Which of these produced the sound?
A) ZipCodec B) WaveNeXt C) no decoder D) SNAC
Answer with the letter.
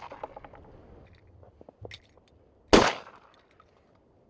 C